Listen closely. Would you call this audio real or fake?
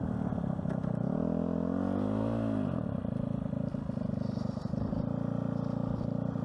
real